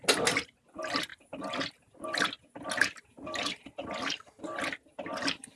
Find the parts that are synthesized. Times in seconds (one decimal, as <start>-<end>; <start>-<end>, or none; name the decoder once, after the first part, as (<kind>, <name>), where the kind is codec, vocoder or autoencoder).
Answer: none